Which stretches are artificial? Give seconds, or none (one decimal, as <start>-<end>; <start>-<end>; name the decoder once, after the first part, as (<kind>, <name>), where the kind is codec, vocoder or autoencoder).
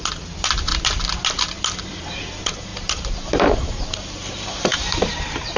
0.0-0.7 (vocoder, BigVGAN v2); 1.8-5.6